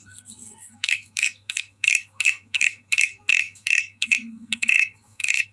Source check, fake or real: fake